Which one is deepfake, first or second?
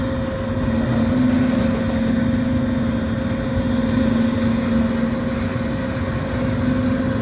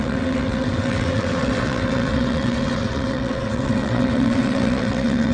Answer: second